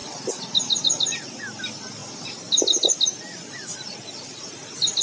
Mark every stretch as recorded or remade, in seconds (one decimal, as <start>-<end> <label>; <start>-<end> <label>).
0.0-5.0 recorded